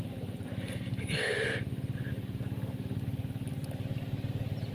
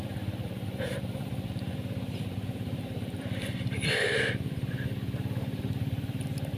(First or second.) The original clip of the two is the first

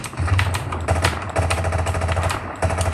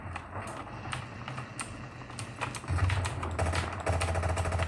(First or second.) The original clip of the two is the second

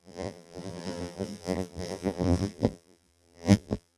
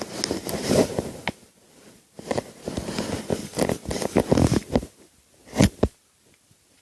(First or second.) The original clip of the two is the second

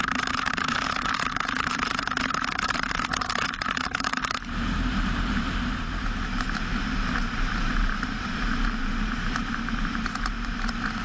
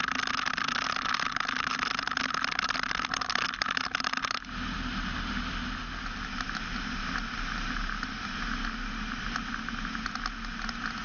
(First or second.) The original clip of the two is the second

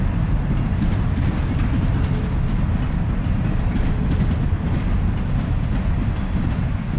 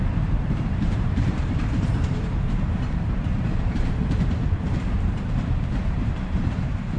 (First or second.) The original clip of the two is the first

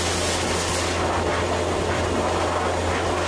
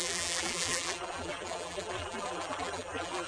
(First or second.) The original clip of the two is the first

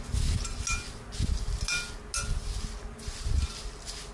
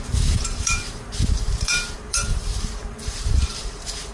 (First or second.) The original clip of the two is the first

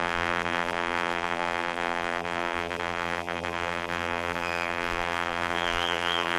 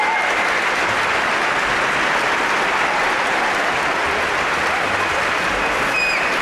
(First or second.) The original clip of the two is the second